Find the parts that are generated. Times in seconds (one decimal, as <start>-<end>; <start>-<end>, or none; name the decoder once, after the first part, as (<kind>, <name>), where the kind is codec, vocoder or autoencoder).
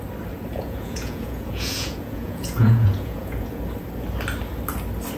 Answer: 0.5-3.6 (vocoder, Vocos)